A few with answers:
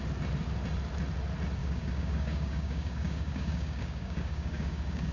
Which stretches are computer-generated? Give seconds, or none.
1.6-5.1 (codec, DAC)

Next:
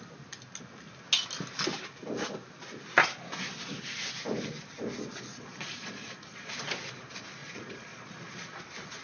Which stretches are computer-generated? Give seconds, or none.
5.3-6.5 (vocoder, Vocos); 7.4-8.6

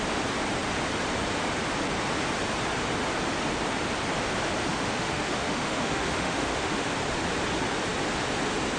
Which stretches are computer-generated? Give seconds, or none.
4.7-6.9 (autoencoder, DAC-VAE)

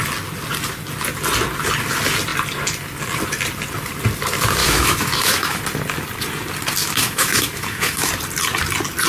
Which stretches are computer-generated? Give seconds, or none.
4.6-5.6 (autoencoder, DAC-VAE); 6.8-8.1

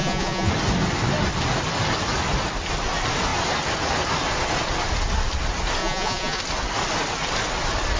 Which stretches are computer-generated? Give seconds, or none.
0.0-0.5 (vocoder, Vocos); 5.8-6.4

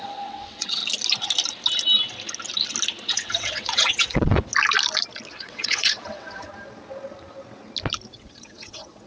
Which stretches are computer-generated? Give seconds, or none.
0.0-0.8 (vocoder, WaveNeXt); 3.1-4.5; 5.3-6.5; 8.1-9.1

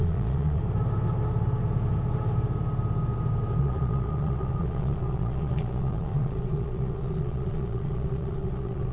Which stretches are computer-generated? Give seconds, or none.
0.0-0.6 (vocoder, Vocos); 3.6-8.9

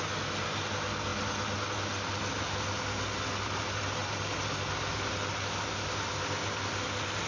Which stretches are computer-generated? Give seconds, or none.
none